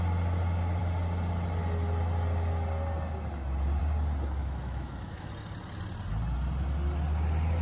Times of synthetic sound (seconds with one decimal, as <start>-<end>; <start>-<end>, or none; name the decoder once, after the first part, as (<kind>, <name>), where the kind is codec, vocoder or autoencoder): 4.4-5.3 (autoencoder, DAC-VAE)